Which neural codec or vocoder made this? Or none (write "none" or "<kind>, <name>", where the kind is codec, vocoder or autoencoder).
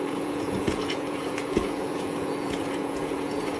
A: vocoder, Vocos